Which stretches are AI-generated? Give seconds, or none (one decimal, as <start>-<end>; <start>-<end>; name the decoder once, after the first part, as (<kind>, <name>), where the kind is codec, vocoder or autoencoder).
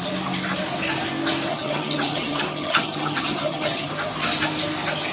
1.5-3.9 (vocoder, HiFi-GAN)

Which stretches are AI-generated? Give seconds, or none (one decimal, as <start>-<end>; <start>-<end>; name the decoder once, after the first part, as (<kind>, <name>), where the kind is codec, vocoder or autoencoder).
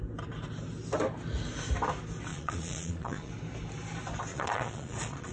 2.3-3.3 (vocoder, Vocos); 4.3-5.3